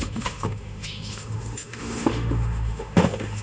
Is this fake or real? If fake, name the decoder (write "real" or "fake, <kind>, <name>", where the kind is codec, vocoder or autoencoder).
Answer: fake, autoencoder, DAC-VAE